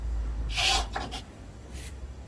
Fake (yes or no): yes